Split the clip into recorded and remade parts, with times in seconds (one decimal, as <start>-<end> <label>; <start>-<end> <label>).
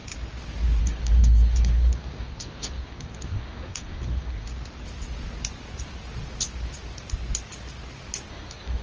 0.0-0.8 recorded; 0.8-4.5 remade; 4.5-8.3 recorded; 8.3-8.8 remade